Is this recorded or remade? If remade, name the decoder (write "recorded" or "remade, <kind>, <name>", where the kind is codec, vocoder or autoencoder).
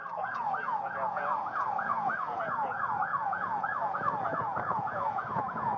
remade, vocoder, Vocos